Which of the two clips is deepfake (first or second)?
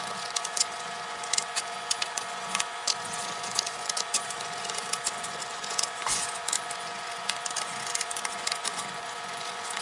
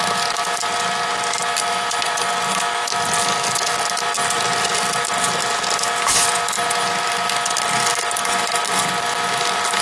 first